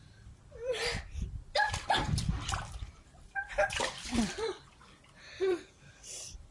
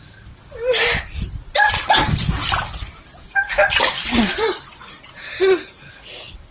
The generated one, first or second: first